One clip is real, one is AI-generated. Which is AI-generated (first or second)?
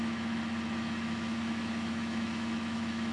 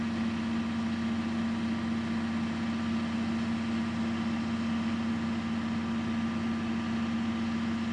first